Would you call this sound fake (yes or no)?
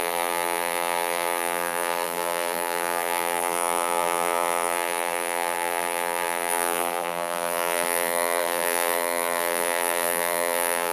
yes